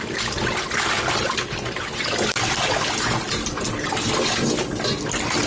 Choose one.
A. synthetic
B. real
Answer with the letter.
B